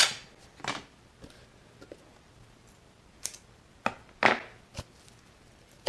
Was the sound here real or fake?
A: real